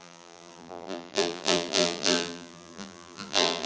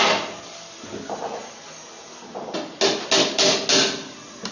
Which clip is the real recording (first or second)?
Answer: second